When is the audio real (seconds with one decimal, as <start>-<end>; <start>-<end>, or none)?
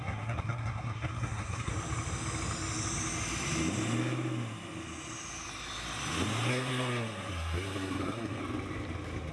1.7-6.5; 8.4-9.3